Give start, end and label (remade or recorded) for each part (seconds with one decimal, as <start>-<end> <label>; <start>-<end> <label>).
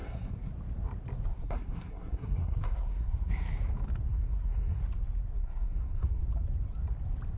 0.0-0.5 remade; 0.5-1.3 recorded; 1.3-3.5 remade; 3.5-4.1 recorded; 4.1-4.8 remade; 4.8-5.4 recorded; 5.4-6.2 remade; 6.2-7.4 recorded